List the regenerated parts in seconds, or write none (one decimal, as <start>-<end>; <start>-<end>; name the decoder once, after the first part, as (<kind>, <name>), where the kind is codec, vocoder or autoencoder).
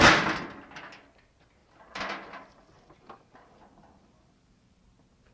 1.6-4.8 (vocoder, BigVGAN v2)